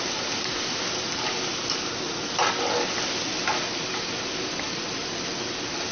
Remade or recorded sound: recorded